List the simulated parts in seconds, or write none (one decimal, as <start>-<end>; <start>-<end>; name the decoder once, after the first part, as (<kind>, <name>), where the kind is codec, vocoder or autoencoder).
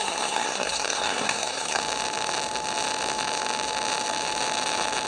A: 0.0-1.8 (codec, SNAC)